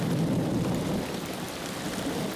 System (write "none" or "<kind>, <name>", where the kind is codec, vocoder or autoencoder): none